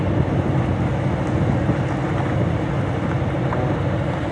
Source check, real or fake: real